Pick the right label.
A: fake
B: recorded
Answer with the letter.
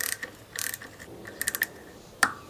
B